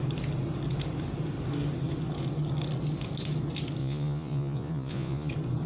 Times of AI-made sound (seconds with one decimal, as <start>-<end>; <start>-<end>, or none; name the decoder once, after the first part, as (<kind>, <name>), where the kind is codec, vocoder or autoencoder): 3.8-5.3 (vocoder, Vocos)

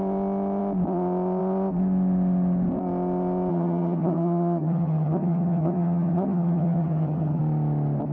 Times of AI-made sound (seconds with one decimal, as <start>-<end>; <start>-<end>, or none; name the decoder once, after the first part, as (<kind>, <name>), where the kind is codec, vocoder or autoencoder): 3.5-7.4 (vocoder, HiFi-GAN)

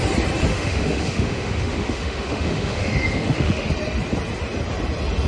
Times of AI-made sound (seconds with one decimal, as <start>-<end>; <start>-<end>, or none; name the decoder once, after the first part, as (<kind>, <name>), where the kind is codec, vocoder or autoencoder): 0.5-3.7 (autoencoder, DAC-VAE)

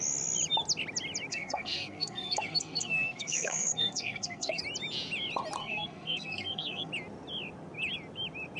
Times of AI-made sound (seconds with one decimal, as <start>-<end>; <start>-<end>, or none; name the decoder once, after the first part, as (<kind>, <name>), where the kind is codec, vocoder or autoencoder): 1.3-4.6 (codec, SNAC); 5.6-6.9

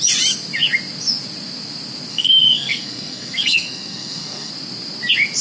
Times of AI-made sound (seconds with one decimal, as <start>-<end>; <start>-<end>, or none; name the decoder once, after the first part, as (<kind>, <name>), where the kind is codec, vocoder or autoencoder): 2.1-4.5 (codec, SNAC)